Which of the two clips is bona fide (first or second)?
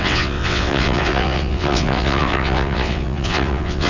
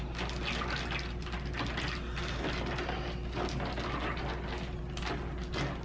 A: second